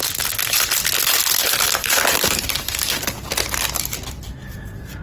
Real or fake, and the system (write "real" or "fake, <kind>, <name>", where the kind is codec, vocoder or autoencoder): real